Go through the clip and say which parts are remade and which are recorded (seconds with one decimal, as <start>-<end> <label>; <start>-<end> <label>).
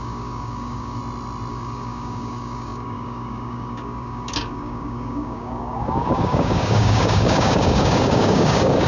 0.0-1.0 remade; 1.0-1.5 recorded; 1.5-8.9 remade